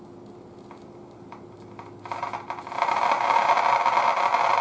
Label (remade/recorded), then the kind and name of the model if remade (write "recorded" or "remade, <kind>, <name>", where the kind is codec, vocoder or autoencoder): recorded